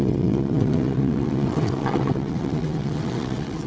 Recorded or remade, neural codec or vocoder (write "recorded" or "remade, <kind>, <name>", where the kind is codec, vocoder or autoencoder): remade, vocoder, WaveNeXt